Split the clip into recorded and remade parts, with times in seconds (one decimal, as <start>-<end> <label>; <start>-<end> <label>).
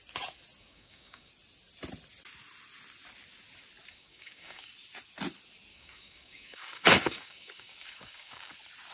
0.0-0.6 recorded; 0.6-1.3 remade; 1.3-3.9 recorded; 3.9-4.7 remade; 4.7-5.7 recorded; 5.7-8.5 remade; 8.5-8.9 recorded